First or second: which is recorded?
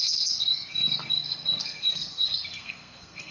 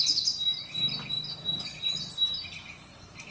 second